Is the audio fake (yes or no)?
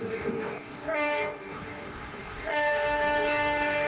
yes